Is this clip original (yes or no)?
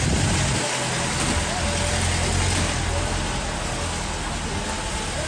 yes